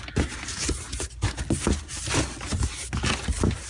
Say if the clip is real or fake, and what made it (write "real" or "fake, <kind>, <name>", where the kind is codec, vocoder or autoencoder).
real